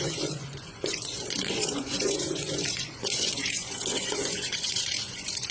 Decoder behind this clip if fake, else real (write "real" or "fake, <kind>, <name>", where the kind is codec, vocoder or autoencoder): fake, vocoder, Vocos